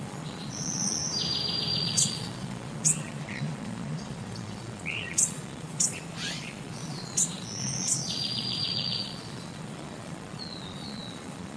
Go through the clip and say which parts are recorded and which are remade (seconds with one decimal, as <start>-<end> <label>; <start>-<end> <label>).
0.0-1.0 remade; 1.0-1.8 recorded; 1.8-11.6 remade